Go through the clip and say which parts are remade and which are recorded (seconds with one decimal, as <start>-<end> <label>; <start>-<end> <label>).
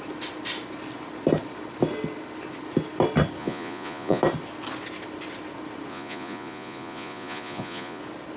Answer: 0.0-3.4 recorded; 3.4-4.2 remade; 4.2-5.9 recorded; 5.9-8.0 remade; 8.0-8.4 recorded